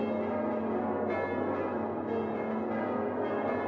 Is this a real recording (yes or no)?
yes